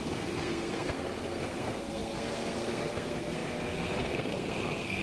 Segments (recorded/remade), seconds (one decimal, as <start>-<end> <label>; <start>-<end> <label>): 0.0-5.0 remade